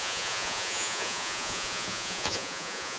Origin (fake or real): fake